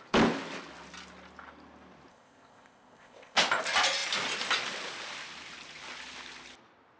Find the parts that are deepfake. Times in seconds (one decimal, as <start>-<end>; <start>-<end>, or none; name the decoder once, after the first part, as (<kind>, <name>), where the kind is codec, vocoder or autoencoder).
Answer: 2.1-3.4 (codec, ZipCodec)